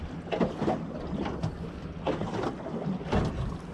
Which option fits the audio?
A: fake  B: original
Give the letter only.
B